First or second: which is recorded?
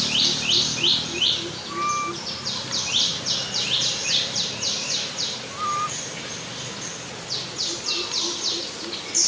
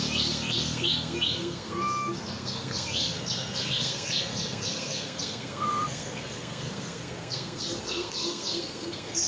first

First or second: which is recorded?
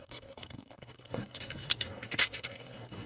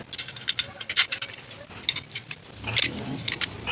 second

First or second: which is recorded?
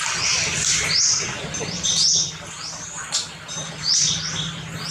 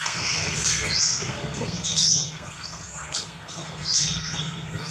first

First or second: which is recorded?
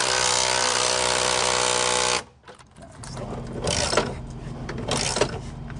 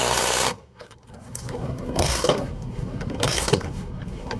first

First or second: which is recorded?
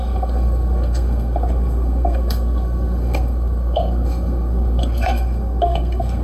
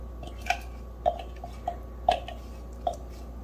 second